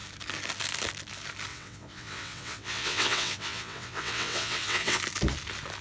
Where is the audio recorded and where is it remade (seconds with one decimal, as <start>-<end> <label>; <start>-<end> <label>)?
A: 0.0-1.5 recorded; 1.5-5.0 remade; 5.0-5.8 recorded